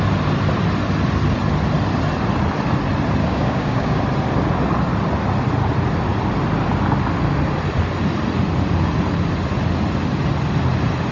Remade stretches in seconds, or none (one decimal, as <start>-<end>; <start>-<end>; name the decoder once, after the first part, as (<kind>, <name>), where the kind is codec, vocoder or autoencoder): 3.2-4.0 (codec, DAC)